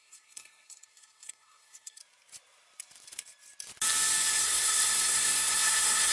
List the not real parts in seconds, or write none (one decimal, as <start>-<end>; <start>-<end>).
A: 0.0-2.0; 4.3-6.1